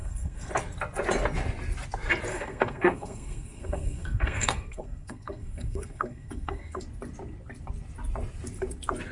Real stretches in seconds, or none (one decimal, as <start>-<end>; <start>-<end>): 0.5-2.3; 6.8-9.1